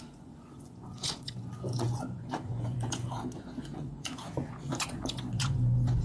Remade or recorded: remade